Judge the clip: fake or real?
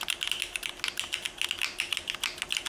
real